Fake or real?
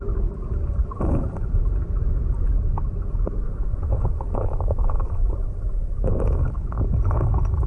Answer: real